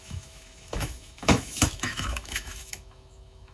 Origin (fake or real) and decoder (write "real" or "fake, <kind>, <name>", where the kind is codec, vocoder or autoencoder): fake, autoencoder, DAC-VAE